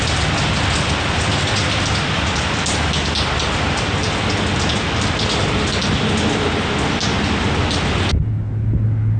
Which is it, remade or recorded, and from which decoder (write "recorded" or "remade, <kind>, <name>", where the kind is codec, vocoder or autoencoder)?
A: recorded